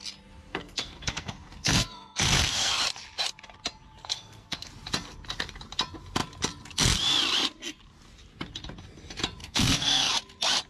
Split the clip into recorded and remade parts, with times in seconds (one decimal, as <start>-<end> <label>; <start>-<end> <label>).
0.0-0.5 recorded; 0.5-2.8 remade; 2.8-4.0 recorded; 4.0-4.7 remade; 4.7-9.4 recorded; 9.4-10.1 remade; 10.1-10.7 recorded